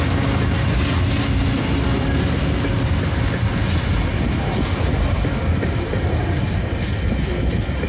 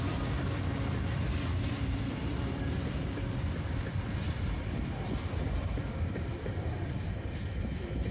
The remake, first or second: second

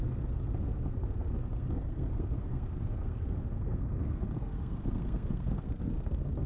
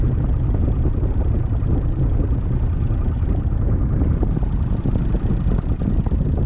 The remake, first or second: first